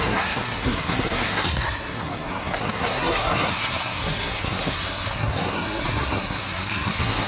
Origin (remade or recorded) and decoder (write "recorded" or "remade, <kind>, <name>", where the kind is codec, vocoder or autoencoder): remade, codec, SNAC